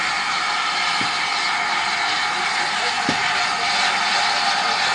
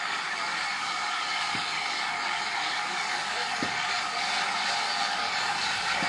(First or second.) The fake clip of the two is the second